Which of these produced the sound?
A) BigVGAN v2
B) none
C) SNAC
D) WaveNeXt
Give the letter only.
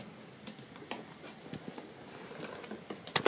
B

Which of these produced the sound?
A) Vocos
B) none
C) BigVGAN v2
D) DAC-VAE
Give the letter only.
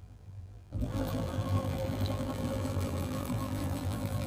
C